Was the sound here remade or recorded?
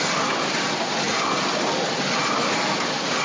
recorded